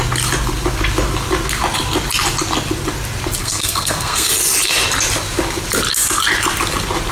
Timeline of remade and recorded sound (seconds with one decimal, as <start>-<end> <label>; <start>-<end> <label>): 0.0-3.4 recorded; 3.4-4.3 remade; 4.3-7.1 recorded